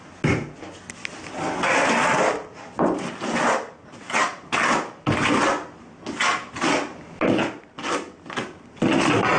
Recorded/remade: recorded